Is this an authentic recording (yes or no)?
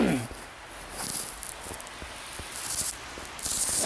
yes